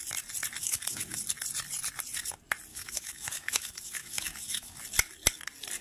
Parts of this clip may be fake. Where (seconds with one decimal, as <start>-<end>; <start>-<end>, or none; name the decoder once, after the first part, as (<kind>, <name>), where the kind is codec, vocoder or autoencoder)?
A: 0.6-1.2 (autoencoder, DAC-VAE); 2.7-4.8